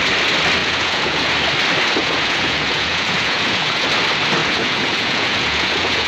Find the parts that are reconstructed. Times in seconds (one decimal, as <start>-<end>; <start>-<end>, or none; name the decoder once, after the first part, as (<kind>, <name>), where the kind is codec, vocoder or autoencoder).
0.6-1.3 (vocoder, Vocos); 2.0-3.9; 4.4-6.1